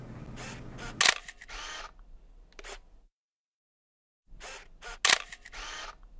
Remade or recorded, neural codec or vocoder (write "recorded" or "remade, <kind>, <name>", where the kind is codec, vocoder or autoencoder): recorded